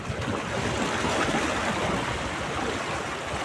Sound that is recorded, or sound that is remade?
recorded